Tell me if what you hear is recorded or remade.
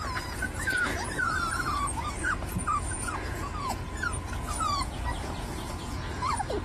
remade